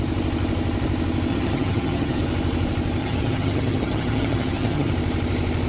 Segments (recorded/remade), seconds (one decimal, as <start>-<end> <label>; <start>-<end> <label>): 0.0-1.3 recorded; 1.3-2.2 remade; 2.2-3.0 recorded; 3.0-4.9 remade; 4.9-5.7 recorded